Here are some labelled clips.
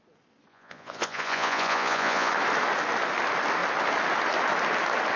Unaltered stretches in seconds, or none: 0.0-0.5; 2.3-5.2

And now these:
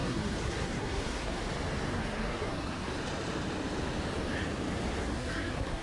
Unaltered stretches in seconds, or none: 1.4-1.9; 2.9-5.0

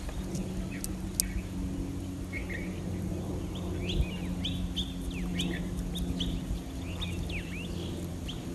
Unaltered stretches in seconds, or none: 0.0-8.5